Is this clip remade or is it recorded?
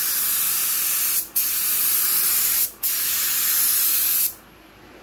recorded